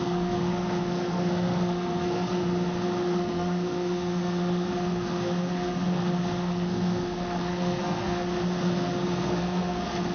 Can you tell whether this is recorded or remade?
remade